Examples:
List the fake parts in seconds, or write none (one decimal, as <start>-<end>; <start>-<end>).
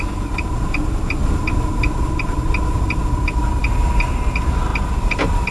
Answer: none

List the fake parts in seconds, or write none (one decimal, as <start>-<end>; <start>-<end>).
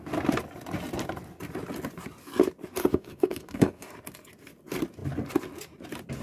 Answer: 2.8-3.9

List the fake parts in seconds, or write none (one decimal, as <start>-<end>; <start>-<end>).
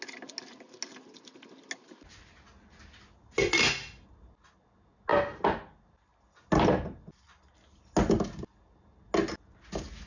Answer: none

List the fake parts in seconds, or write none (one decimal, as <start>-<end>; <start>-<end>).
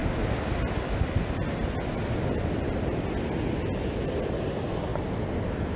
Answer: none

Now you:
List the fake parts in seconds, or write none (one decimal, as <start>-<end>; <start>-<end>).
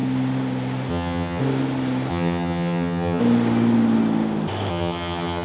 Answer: 0.9-1.4; 2.1-3.2; 4.7-5.4